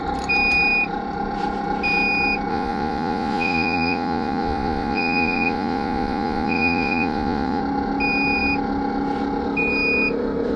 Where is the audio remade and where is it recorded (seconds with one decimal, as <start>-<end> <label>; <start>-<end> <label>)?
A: 0.0-2.5 recorded; 2.5-7.6 remade; 7.6-10.6 recorded